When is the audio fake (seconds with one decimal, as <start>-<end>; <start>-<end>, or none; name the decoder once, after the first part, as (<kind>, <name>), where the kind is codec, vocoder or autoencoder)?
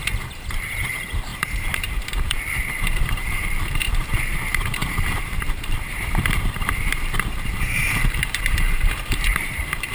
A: 0.0-9.9 (vocoder, BigVGAN v2)